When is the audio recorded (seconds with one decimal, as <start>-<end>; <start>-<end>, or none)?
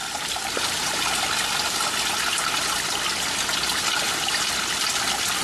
0.0-5.4